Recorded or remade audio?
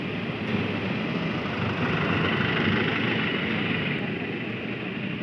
recorded